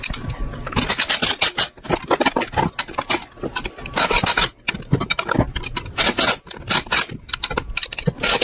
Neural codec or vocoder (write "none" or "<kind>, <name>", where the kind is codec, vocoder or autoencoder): none